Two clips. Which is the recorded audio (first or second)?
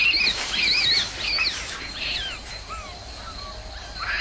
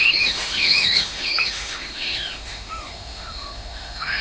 first